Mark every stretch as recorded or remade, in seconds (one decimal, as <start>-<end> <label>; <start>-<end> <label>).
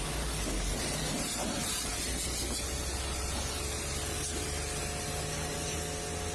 0.0-6.3 recorded